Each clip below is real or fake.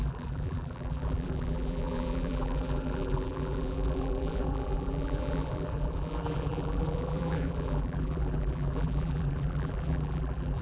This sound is fake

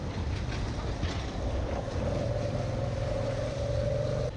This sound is real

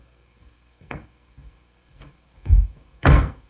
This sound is fake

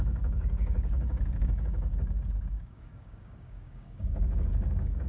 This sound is fake